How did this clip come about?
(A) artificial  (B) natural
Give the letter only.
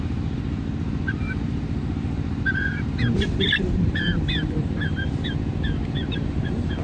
A